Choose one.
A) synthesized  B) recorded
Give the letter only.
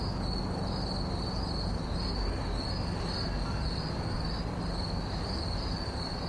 B